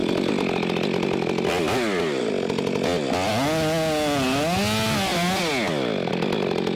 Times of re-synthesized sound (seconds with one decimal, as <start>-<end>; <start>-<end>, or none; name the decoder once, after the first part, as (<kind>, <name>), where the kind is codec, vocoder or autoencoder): none